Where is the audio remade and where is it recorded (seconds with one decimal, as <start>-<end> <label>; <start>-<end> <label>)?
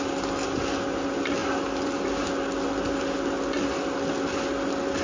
0.0-5.0 recorded